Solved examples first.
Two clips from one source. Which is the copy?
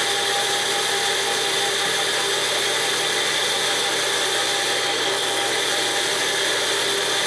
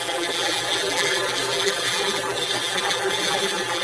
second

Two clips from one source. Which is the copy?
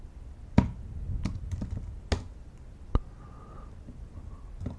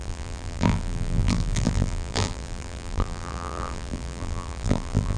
second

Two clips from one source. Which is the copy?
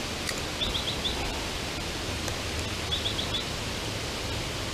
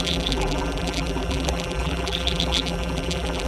second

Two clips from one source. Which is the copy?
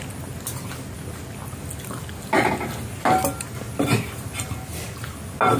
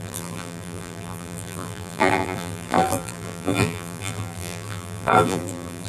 second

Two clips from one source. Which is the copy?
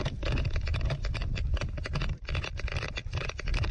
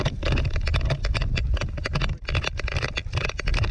first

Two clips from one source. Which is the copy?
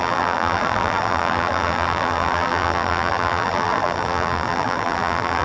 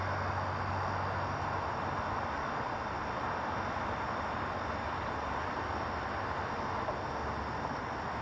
first